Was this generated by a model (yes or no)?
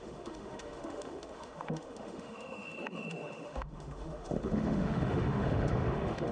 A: yes